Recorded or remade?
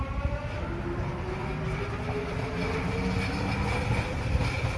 recorded